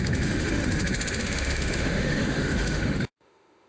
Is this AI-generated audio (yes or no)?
yes